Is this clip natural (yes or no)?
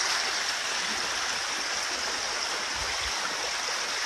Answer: yes